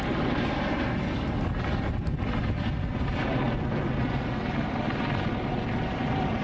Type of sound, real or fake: real